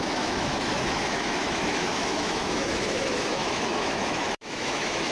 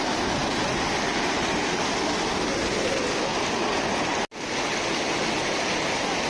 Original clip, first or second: second